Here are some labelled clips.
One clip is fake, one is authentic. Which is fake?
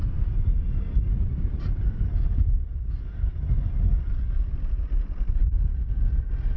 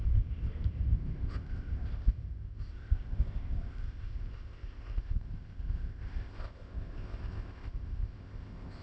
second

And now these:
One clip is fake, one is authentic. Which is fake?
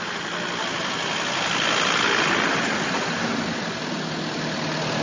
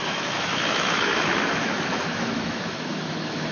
second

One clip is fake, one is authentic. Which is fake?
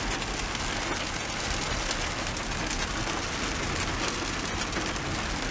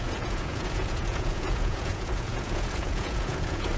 second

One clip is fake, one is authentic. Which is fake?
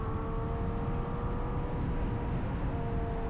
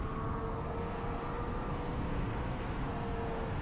second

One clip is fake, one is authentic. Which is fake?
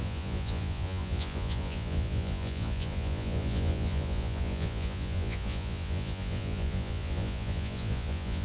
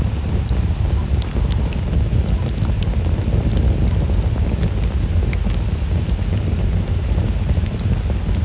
first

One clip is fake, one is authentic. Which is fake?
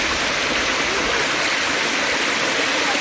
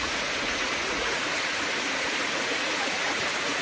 second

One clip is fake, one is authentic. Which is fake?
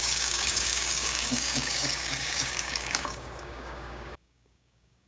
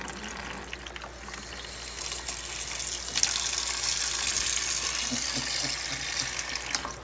first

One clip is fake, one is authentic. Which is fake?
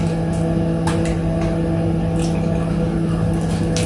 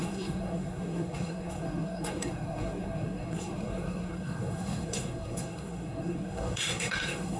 second